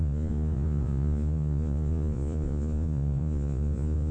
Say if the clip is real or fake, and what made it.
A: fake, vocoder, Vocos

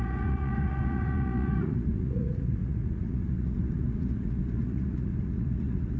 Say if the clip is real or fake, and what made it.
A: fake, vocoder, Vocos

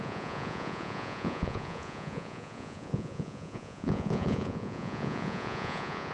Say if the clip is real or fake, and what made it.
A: fake, vocoder, Vocos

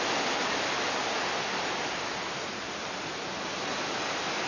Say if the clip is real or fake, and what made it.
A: real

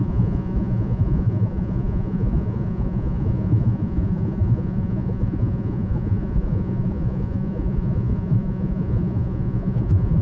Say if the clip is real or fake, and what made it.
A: fake, vocoder, Vocos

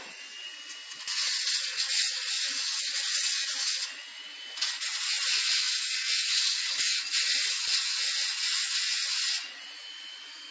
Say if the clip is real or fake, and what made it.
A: fake, vocoder, Vocos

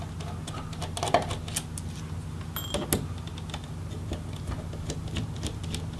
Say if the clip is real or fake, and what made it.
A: real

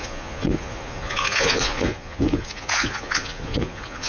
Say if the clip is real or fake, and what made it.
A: fake, vocoder, Vocos